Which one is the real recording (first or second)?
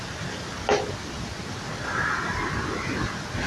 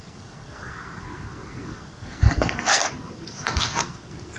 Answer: first